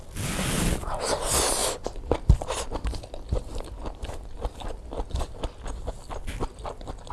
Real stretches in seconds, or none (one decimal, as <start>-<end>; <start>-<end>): 0.0-7.1